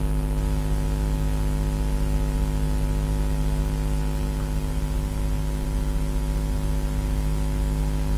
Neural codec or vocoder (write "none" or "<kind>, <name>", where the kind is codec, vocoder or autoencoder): none